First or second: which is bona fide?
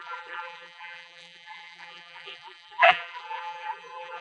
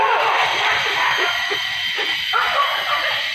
second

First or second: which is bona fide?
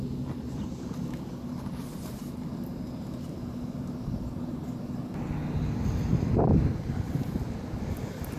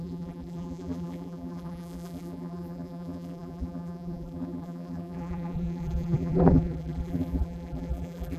first